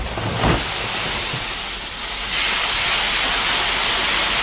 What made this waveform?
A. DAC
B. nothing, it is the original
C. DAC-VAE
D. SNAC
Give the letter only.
B